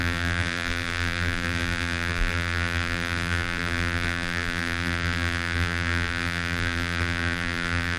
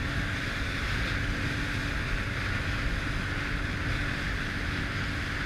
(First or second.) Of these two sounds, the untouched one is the second